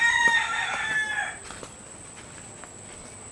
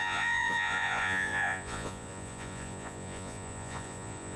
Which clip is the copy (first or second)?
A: second